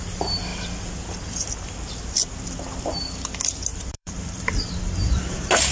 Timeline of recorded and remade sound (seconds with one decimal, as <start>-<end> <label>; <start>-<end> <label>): 0.0-3.7 recorded; 3.7-5.2 remade; 5.2-5.7 recorded